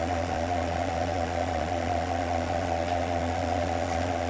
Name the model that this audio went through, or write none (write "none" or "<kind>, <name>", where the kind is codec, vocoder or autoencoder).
vocoder, Vocos